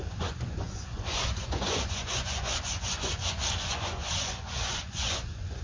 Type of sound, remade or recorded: remade